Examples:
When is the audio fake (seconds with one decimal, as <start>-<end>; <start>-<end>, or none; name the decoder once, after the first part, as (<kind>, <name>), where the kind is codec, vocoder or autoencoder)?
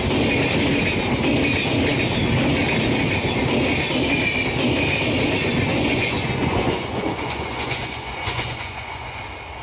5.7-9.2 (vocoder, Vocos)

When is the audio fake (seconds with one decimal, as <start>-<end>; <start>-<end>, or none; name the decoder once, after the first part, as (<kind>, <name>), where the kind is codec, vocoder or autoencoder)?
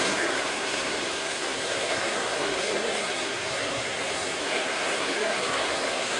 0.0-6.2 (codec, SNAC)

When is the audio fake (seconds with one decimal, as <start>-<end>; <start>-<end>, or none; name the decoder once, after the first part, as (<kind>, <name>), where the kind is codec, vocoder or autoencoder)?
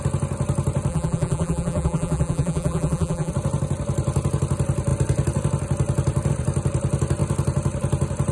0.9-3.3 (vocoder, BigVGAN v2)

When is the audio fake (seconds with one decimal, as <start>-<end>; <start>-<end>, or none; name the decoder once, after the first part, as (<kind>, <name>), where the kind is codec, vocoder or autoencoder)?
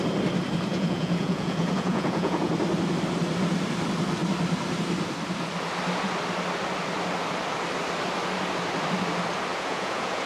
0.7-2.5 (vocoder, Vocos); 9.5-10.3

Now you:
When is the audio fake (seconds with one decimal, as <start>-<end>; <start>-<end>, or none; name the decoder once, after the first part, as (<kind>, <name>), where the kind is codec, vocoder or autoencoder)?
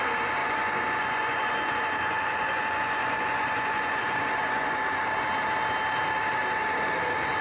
0.4-4.8 (vocoder, Vocos)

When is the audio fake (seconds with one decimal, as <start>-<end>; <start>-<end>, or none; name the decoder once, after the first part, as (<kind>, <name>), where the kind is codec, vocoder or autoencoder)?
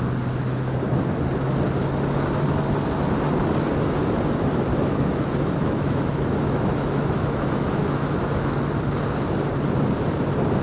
4.7-8.7 (autoencoder, DAC-VAE)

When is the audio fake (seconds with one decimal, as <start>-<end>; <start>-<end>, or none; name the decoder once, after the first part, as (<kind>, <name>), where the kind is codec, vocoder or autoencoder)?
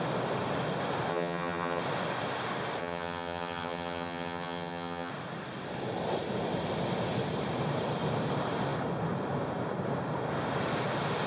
1.1-1.8 (vocoder, HiFi-GAN); 2.8-5.1